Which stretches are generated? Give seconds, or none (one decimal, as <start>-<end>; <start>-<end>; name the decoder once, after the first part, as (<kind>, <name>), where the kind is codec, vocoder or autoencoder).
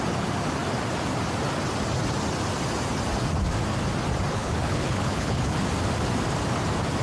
4.3-5.6 (codec, HILCodec)